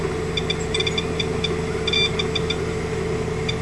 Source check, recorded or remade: recorded